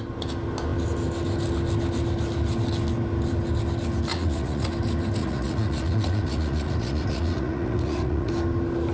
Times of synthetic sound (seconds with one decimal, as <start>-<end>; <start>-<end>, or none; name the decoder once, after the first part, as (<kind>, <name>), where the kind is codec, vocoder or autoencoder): 4.1-4.7 (vocoder, Vocos); 5.2-8.3